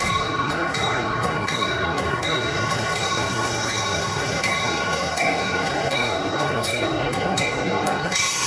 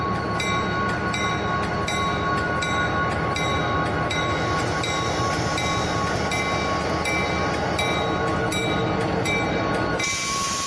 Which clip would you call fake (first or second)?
first